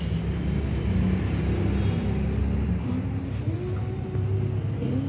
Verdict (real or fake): real